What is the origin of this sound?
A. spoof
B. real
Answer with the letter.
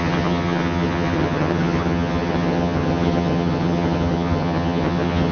A